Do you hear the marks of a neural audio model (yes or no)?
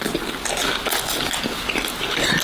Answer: no